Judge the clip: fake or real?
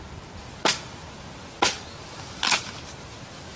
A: real